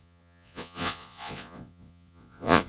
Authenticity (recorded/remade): remade